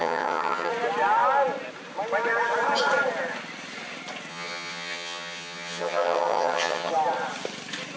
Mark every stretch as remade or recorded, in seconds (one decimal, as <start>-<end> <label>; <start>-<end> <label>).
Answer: 0.0-0.7 remade; 0.7-4.3 recorded; 4.3-6.9 remade; 6.9-8.0 recorded